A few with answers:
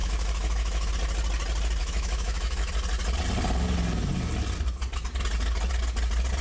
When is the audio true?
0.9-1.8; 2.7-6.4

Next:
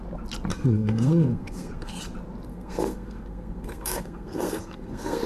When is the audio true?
0.0-0.5; 2.0-2.5

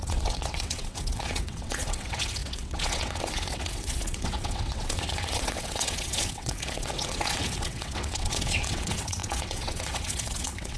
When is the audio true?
none

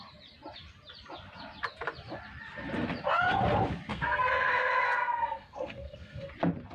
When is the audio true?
0.0-3.9; 6.3-6.7

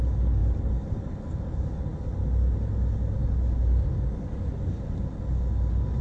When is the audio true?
0.0-0.4; 1.0-6.0

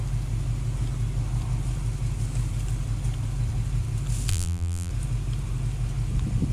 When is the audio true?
0.0-4.3; 4.9-6.5